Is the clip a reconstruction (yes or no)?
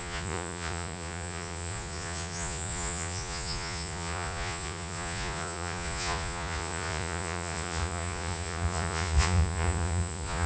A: yes